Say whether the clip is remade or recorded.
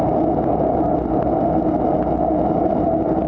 recorded